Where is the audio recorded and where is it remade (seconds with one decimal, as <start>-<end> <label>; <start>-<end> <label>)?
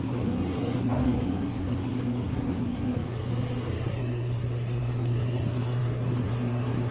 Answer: 0.0-6.9 remade